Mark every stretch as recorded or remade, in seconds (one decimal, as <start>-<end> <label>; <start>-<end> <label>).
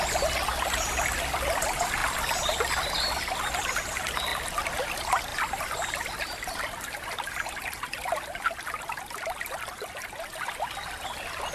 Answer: 0.0-11.5 recorded